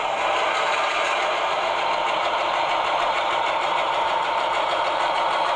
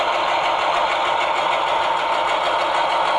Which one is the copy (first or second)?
first